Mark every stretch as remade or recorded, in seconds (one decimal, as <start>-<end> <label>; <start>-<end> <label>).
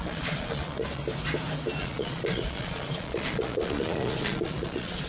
0.0-1.0 remade; 1.0-1.8 recorded; 1.8-5.1 remade